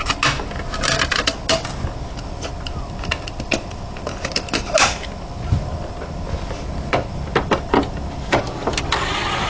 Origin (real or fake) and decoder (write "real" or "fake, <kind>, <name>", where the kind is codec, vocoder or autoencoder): real